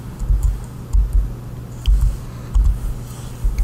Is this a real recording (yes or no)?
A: yes